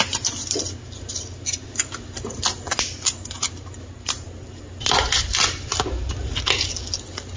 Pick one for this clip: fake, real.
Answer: real